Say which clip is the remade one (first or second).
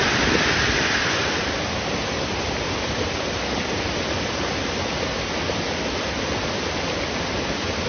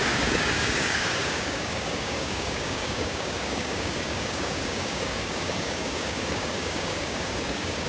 second